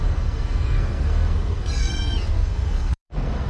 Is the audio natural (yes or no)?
no